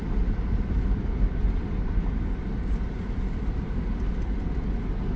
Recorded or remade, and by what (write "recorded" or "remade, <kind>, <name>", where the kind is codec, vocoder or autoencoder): recorded